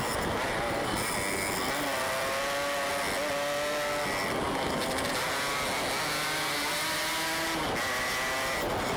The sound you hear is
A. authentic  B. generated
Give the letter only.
A